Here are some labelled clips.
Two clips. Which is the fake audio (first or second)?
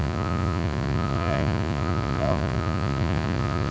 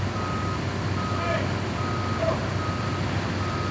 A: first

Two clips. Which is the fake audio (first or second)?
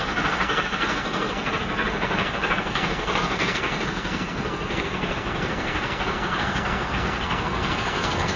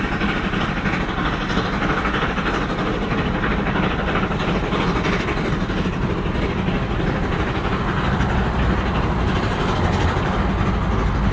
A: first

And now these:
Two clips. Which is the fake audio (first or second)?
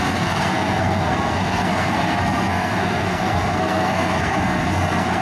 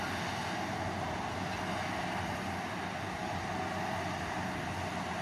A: first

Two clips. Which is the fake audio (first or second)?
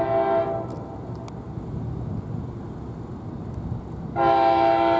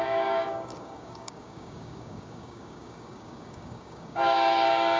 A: second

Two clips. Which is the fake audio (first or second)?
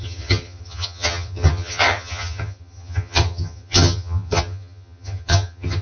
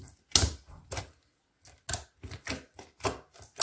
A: first